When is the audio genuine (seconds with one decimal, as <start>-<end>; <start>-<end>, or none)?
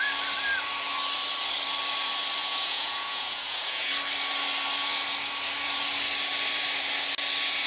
0.0-2.4; 3.9-7.7